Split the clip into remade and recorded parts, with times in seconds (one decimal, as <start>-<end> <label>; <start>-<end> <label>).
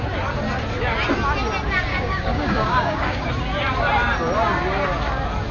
0.0-1.9 recorded; 1.9-3.3 remade; 3.3-5.5 recorded